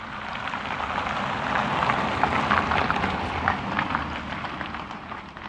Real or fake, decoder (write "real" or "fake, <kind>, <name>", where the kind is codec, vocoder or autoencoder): real